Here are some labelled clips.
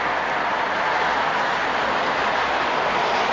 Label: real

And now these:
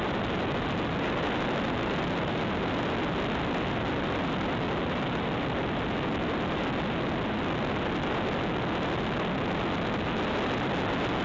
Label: real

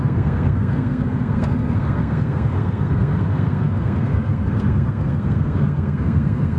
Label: fake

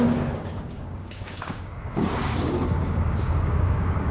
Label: fake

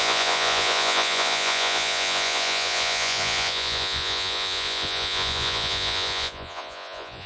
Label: fake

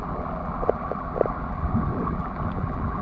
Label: fake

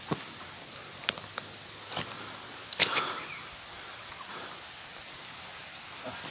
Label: real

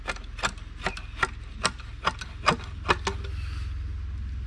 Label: real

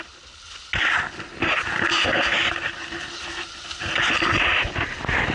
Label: real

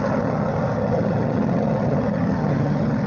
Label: fake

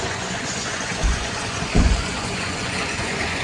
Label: fake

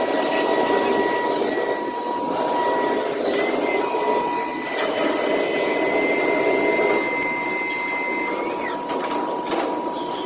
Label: real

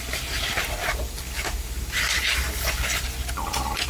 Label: fake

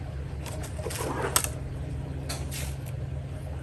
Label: real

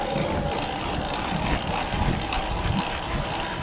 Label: real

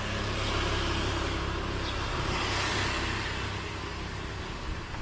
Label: real